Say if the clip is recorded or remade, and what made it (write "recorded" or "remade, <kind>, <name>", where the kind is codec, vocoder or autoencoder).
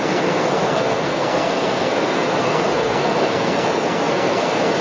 remade, codec, SNAC